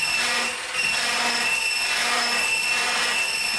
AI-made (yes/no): no